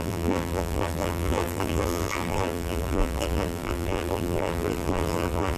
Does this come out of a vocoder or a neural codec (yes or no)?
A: yes